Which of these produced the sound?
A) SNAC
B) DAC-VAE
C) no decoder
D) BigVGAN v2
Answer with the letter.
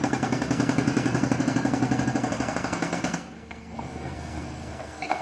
A